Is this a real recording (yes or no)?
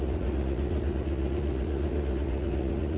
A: no